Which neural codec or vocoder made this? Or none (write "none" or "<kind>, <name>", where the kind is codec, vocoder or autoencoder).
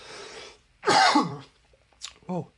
vocoder, BigVGAN v2